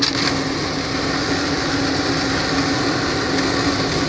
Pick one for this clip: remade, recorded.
recorded